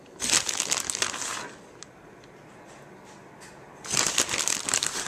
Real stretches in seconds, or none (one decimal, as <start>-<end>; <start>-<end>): 0.0-5.1